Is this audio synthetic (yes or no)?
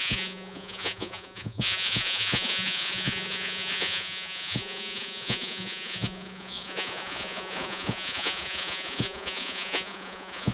yes